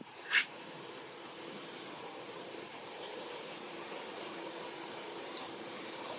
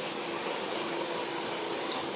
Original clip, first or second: second